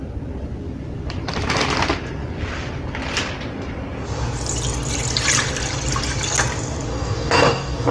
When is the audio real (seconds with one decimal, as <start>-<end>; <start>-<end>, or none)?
0.0-6.9